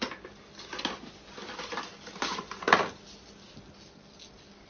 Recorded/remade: recorded